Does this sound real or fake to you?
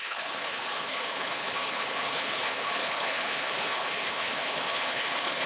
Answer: fake